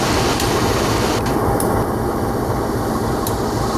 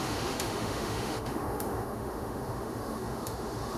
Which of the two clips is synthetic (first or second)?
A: second